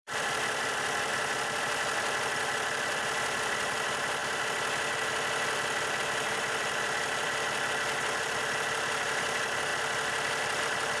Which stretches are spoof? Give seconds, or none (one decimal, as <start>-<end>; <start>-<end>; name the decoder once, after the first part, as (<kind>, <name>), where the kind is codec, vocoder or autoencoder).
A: 0.0-1.1 (vocoder, BigVGAN v2); 1.6-4.2; 6.0-11.0